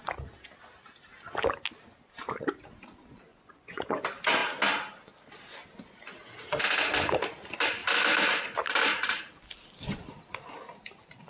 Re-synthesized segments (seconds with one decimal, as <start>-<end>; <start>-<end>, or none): 3.3-4.0